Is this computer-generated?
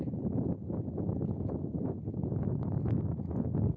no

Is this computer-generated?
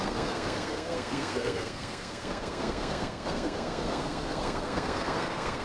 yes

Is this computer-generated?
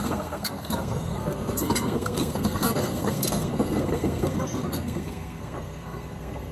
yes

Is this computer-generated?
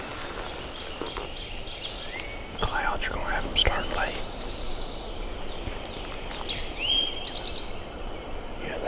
no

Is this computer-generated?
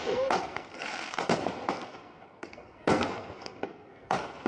yes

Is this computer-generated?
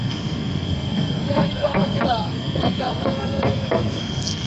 yes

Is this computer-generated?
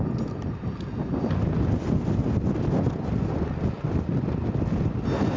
no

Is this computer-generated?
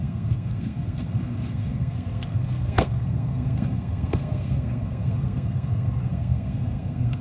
yes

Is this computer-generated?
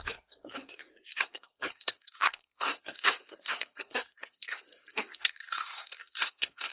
yes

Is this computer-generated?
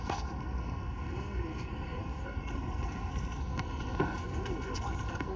yes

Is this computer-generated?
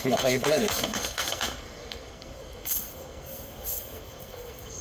yes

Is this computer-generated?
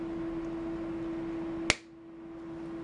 no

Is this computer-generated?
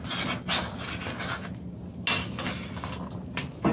no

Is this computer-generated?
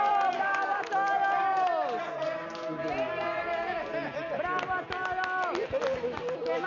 no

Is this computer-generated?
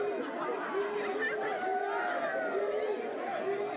no